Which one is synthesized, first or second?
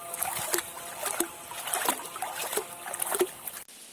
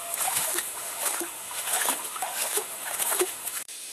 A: second